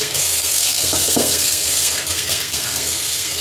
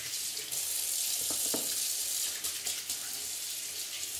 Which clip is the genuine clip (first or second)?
second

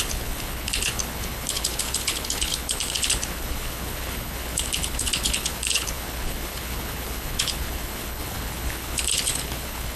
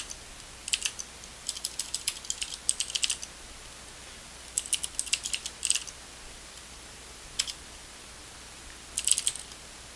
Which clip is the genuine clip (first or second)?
second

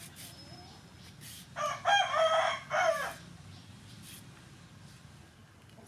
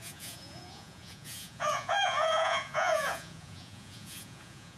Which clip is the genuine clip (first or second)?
first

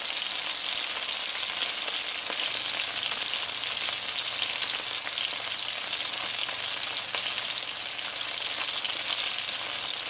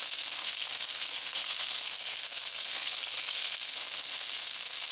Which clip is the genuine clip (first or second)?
first